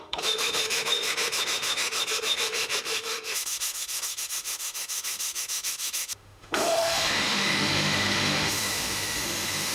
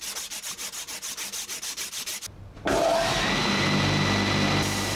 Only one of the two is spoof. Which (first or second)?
first